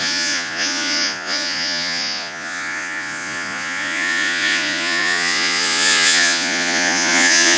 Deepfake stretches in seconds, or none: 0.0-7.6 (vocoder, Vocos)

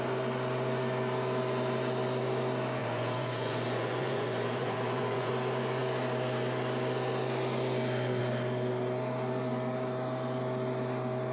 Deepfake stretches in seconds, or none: 2.8-5.3 (vocoder, Vocos)